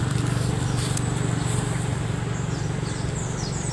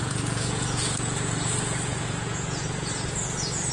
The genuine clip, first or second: first